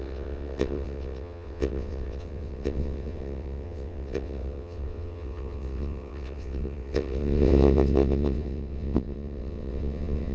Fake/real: fake